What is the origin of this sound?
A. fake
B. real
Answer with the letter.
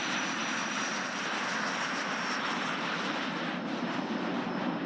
A